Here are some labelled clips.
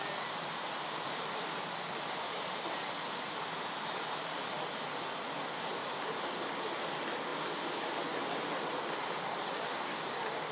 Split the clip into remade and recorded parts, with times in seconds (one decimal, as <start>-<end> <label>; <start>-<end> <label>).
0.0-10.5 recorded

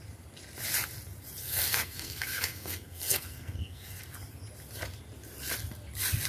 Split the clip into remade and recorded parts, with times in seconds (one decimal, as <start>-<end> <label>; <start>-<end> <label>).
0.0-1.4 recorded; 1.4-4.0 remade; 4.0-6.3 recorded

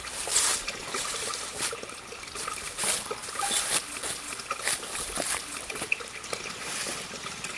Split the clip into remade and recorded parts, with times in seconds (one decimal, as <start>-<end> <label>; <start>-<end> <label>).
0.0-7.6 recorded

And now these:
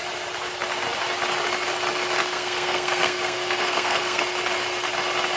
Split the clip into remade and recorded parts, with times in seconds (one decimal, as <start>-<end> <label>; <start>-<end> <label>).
0.0-2.2 recorded; 2.2-4.2 remade; 4.2-5.4 recorded

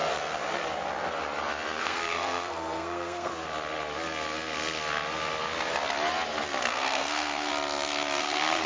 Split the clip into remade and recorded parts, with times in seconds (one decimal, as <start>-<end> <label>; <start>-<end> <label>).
0.0-1.8 recorded; 1.8-3.3 remade; 3.3-6.7 recorded; 6.7-7.5 remade; 7.5-8.2 recorded; 8.2-8.7 remade

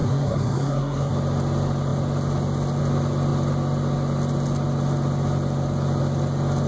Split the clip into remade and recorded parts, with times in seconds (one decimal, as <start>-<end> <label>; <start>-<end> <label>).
0.0-1.1 remade; 1.1-6.7 recorded